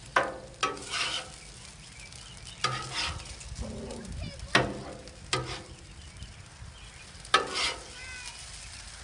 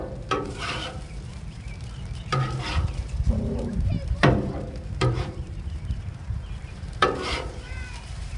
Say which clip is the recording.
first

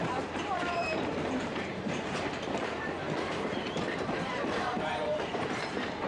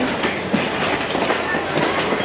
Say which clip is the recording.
second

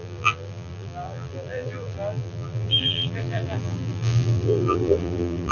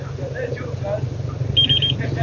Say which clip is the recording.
second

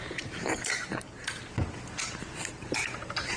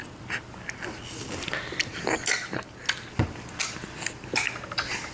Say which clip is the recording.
second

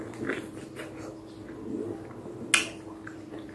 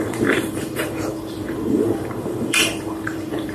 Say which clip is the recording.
first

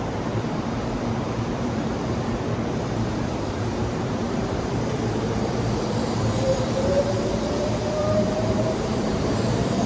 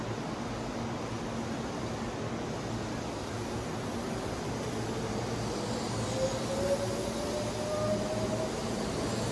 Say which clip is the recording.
second